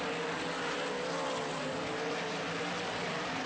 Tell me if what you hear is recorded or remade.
recorded